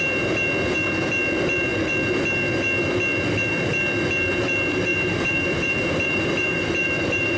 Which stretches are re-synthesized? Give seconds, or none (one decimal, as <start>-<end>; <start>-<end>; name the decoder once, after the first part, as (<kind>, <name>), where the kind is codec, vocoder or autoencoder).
4.9-7.4 (vocoder, BigVGAN v2)